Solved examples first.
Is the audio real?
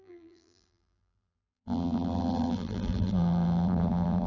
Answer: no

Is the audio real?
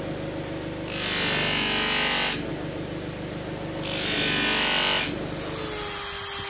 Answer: yes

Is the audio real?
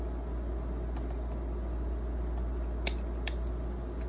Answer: yes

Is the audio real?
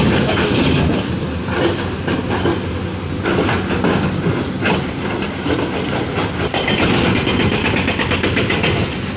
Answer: yes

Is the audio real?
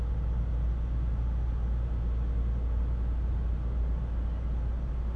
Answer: yes